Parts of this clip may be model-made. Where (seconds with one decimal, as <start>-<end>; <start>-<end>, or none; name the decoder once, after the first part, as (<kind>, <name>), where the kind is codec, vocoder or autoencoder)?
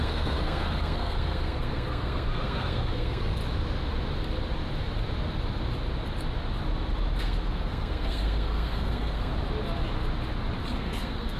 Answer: 0.0-3.4 (codec, SNAC); 7.2-9.3; 10.7-11.4